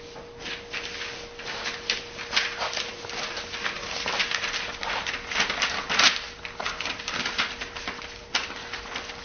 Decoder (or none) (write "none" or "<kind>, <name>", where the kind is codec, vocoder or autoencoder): none